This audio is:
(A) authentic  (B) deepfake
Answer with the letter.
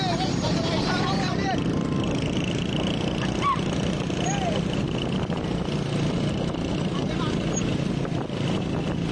A